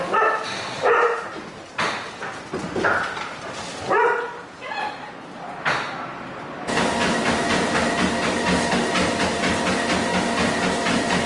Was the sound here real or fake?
real